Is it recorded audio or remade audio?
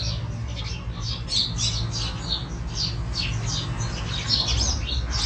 recorded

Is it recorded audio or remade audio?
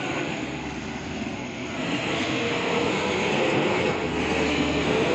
remade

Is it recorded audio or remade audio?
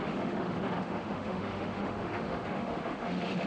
remade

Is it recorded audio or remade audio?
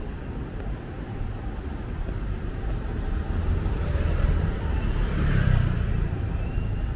remade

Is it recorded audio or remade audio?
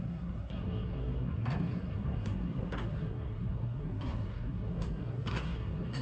remade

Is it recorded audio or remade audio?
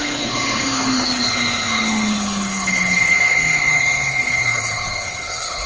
remade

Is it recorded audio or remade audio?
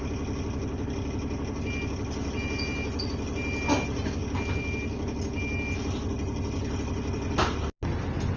recorded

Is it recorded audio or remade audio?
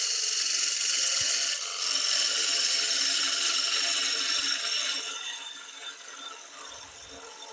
recorded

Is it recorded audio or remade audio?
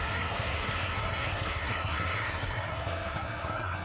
remade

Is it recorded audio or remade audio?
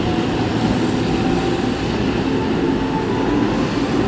recorded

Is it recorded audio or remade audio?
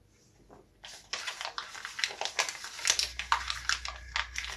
recorded